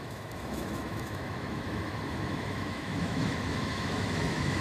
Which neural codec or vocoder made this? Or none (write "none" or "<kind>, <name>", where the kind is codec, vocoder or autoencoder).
autoencoder, DAC-VAE